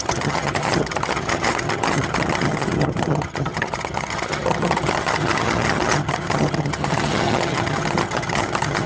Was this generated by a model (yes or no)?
yes